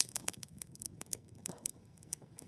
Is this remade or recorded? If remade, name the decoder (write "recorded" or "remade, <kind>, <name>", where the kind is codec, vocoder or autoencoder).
remade, codec, SNAC